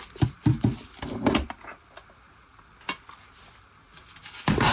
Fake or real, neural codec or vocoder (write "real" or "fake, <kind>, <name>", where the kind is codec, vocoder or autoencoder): real